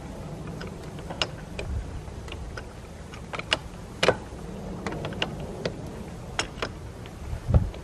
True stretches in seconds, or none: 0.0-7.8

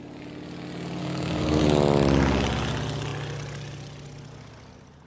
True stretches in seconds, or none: 0.0-1.0; 1.6-5.1

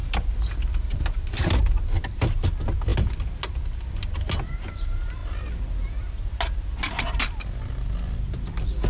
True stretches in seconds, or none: 0.0-8.9

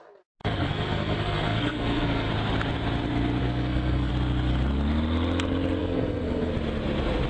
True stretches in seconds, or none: 0.0-0.4; 2.3-3.4; 4.1-5.8; 6.5-7.3

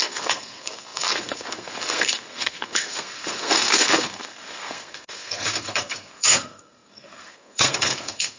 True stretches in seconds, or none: none

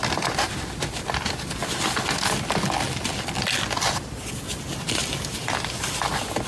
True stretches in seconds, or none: 0.0-6.5

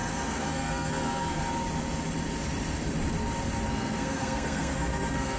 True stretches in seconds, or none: 1.4-3.7